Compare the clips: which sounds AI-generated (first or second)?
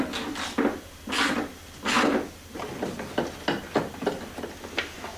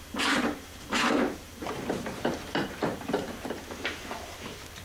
second